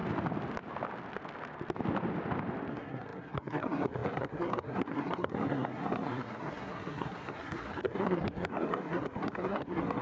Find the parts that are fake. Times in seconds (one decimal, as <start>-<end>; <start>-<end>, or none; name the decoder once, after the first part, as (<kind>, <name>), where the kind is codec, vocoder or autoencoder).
2.7-10.0 (codec, SNAC)